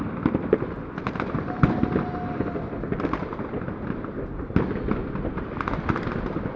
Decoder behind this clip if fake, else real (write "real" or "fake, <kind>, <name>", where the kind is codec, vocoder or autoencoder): real